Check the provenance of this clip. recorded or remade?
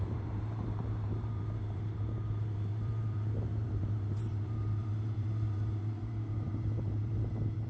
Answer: remade